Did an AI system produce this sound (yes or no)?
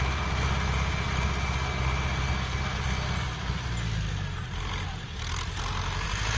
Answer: no